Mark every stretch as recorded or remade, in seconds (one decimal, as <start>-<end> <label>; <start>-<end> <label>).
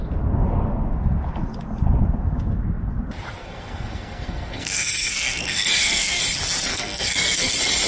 0.0-3.4 recorded; 3.4-6.2 remade; 6.2-6.7 recorded; 6.7-7.5 remade; 7.5-7.9 recorded